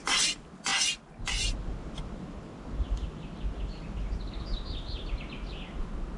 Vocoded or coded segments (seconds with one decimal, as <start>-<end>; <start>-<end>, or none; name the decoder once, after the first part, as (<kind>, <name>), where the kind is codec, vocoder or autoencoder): none

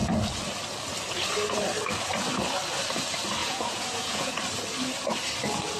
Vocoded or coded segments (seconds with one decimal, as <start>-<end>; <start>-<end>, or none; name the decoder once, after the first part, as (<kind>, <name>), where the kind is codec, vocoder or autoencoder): 3.4-4.4 (vocoder, Vocos)

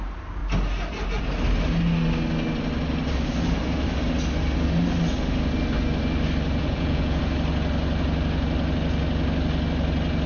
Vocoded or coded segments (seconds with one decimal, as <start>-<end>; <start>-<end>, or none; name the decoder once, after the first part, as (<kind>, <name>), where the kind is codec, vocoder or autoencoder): 6.6-7.2 (vocoder, Vocos)